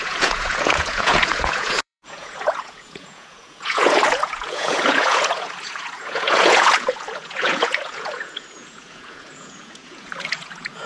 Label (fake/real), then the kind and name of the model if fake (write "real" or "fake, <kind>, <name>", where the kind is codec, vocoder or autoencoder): fake, vocoder, Vocos